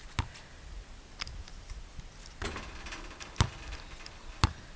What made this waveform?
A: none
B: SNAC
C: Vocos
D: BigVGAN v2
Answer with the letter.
A